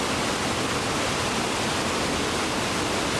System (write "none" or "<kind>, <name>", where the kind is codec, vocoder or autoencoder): none